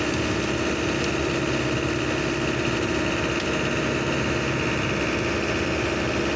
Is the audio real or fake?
real